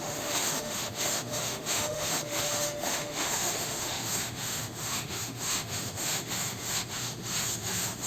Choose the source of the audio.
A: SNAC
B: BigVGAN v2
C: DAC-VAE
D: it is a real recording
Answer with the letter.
C